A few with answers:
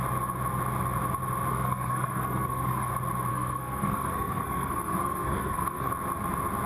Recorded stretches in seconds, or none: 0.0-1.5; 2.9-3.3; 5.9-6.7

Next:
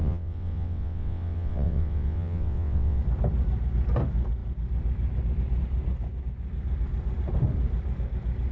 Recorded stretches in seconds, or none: 3.0-8.5

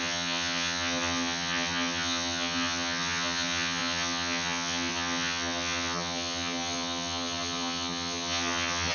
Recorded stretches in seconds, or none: none